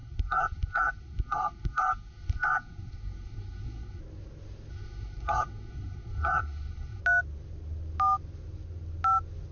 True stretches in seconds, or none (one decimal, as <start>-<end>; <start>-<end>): 4.0-4.7; 7.0-9.5